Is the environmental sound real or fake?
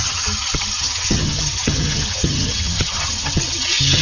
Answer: fake